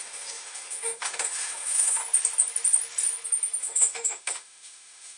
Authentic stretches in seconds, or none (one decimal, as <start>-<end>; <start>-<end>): 2.0-3.6